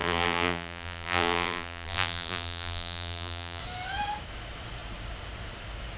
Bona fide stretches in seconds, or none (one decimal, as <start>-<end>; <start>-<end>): 3.6-6.0